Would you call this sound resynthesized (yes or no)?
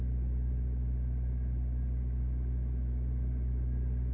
no